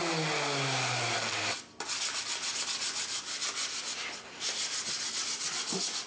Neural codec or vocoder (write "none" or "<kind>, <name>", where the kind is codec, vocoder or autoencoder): none